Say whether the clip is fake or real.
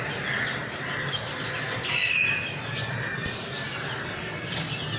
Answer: real